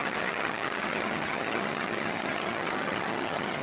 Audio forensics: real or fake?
fake